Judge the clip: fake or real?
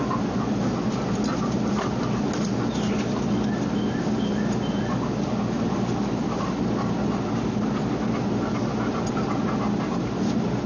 real